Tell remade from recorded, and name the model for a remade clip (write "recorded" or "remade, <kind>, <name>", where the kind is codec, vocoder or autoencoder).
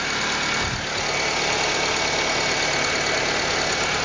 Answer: recorded